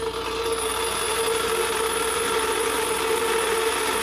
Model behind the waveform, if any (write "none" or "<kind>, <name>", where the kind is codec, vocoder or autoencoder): none